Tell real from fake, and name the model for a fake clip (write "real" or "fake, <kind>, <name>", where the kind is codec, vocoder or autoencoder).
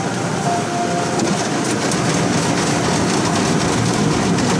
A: real